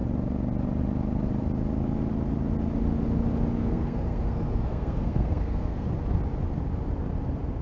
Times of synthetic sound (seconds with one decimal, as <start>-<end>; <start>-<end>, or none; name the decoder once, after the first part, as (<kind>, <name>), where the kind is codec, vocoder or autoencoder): 3.6-5.9 (codec, SNAC)